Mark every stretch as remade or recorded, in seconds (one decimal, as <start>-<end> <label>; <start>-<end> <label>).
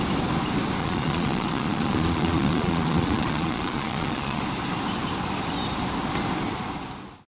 0.0-0.8 recorded; 0.8-4.4 remade; 4.4-7.3 recorded